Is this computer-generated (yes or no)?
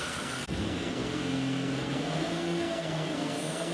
yes